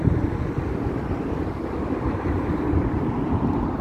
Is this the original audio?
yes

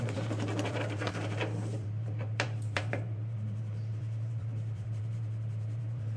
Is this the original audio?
no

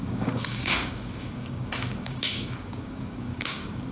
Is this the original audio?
no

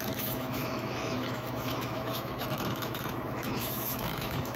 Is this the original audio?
no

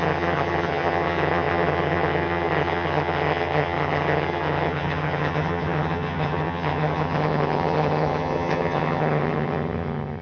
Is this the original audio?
no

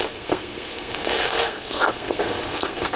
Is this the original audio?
no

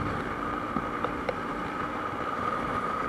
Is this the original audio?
no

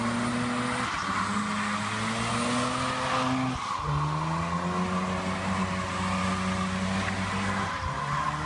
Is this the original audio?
yes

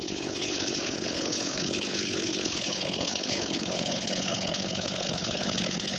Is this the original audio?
no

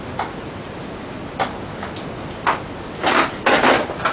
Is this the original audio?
yes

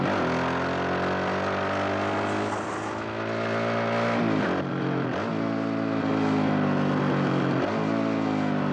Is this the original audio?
yes